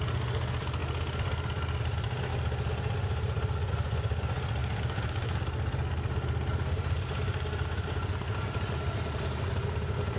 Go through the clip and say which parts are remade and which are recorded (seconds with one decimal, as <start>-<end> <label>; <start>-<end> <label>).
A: 0.0-4.6 recorded; 4.6-5.4 remade; 5.4-10.2 recorded